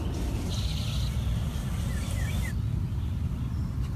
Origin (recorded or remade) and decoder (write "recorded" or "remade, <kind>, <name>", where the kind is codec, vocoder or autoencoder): recorded